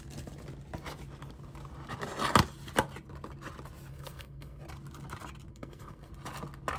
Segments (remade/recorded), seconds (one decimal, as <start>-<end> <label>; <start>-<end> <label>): 0.0-3.9 recorded; 3.9-4.6 remade; 4.6-5.5 recorded; 5.5-6.1 remade; 6.1-6.8 recorded